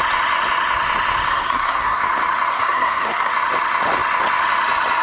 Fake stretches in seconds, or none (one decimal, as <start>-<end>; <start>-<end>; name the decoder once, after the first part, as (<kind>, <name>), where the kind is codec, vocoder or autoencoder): 1.3-2.0 (codec, SNAC); 2.5-3.3